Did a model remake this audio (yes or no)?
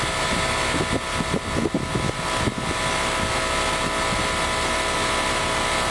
no